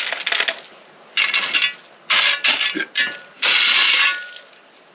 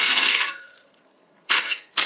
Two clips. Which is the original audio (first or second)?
first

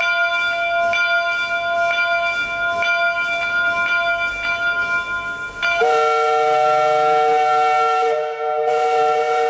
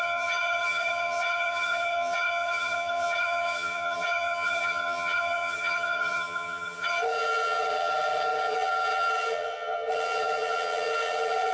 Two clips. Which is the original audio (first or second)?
first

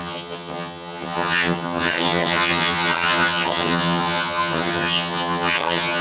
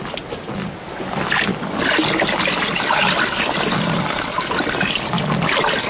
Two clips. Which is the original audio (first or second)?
second